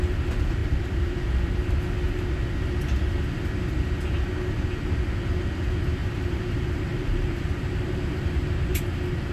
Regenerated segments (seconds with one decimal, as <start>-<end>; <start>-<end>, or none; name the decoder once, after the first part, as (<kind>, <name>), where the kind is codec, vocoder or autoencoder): 0.6-1.2 (vocoder, BigVGAN v2); 6.0-8.8